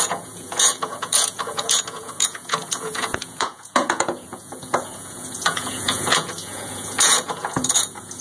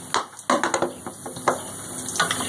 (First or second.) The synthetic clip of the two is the first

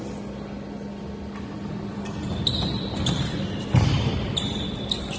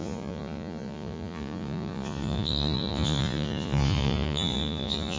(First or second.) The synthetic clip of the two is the second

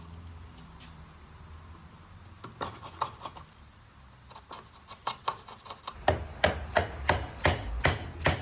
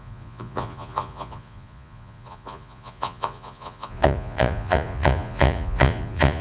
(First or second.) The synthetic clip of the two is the second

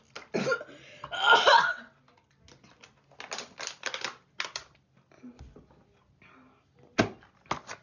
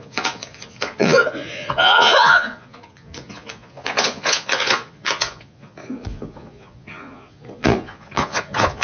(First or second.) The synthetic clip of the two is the second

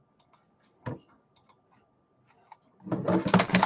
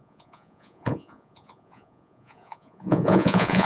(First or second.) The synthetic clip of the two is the second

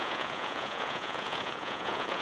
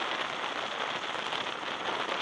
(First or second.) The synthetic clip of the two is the first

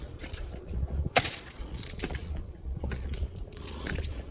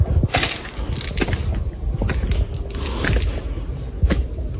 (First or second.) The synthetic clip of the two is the first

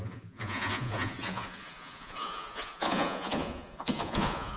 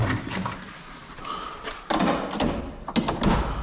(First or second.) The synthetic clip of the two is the first